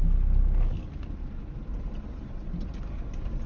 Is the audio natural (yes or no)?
yes